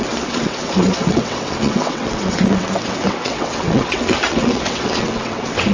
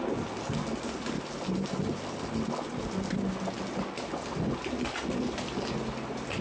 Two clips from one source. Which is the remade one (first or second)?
first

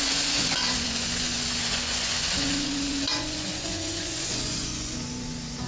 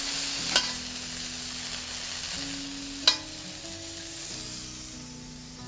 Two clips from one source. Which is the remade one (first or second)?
first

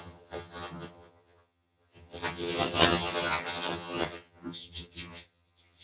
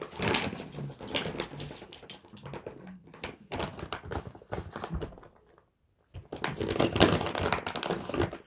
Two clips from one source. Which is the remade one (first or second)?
first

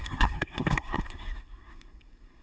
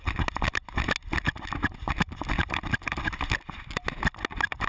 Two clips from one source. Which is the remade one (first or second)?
first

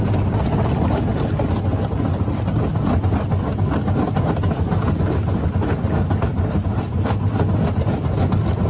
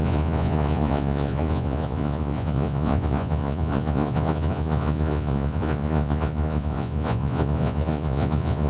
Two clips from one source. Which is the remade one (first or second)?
second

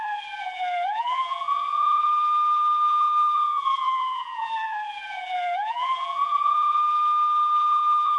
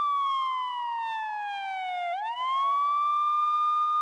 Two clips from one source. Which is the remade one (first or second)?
first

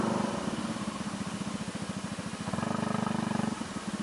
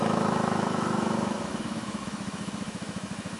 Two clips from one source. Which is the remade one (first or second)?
second